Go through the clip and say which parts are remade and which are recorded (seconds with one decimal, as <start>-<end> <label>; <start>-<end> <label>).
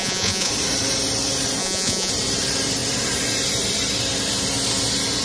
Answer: 0.0-0.5 remade; 0.5-1.6 recorded; 1.6-2.1 remade; 2.1-5.2 recorded